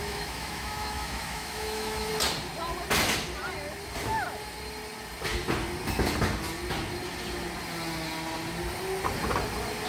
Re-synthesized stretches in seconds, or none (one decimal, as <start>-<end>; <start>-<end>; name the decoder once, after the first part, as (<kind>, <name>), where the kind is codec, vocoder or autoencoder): 0.0-2.1 (autoencoder, DAC-VAE)